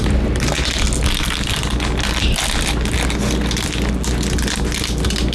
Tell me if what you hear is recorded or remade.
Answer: recorded